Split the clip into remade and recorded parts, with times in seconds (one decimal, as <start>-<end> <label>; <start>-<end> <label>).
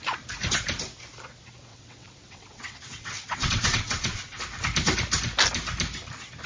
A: 0.0-1.7 recorded; 1.7-4.4 remade; 4.4-6.5 recorded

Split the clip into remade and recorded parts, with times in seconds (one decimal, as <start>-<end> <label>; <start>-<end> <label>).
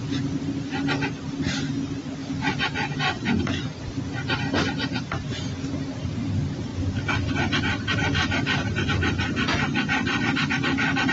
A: 0.0-11.1 recorded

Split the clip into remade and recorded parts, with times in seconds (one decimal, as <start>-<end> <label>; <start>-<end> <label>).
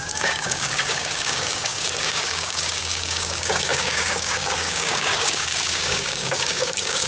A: 0.0-7.1 remade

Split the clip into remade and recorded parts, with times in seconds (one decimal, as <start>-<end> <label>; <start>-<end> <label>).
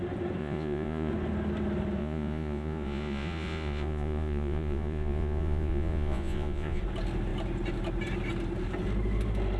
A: 0.0-0.4 recorded; 0.4-1.1 remade; 1.1-2.0 recorded; 2.0-6.8 remade; 6.8-9.6 recorded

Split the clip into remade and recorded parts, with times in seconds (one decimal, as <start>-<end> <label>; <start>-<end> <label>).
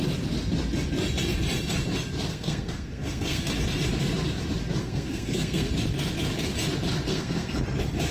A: 0.0-2.3 recorded; 2.3-3.5 remade; 3.5-4.8 recorded; 4.8-5.7 remade; 5.7-7.1 recorded; 7.1-7.6 remade; 7.6-8.1 recorded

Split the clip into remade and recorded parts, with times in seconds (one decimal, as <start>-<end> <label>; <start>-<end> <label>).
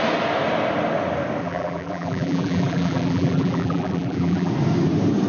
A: 0.0-1.4 recorded; 1.4-4.5 remade; 4.5-5.3 recorded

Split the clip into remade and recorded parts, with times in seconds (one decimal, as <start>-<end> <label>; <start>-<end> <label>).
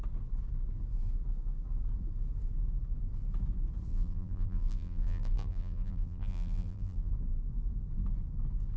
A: 0.0-3.9 recorded; 3.9-7.1 remade; 7.1-8.8 recorded